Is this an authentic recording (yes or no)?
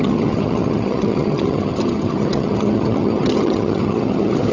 no